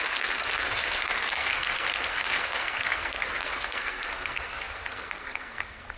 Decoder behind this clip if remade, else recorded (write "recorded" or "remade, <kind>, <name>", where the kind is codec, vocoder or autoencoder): remade, codec, SNAC